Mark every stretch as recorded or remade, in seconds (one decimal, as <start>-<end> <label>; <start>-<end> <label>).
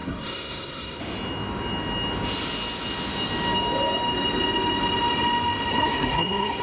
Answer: 0.0-1.0 remade; 1.0-5.7 recorded; 5.7-6.6 remade